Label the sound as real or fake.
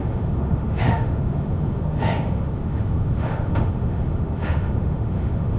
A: fake